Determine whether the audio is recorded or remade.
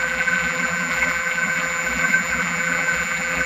remade